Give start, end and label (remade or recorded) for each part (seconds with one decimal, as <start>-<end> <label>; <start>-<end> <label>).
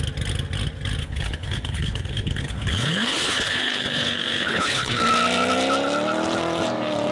0.0-1.0 recorded; 1.0-5.0 remade; 5.0-7.1 recorded